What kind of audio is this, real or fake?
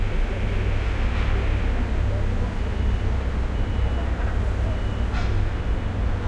real